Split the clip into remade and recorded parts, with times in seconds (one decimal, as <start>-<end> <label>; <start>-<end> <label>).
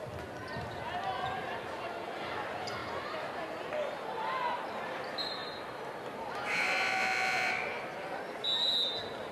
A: 0.0-9.3 recorded